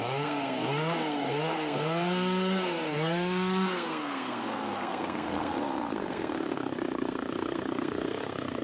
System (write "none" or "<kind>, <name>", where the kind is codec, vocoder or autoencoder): codec, SNAC